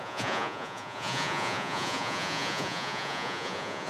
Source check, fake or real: fake